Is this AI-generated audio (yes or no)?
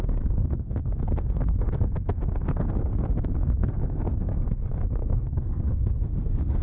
yes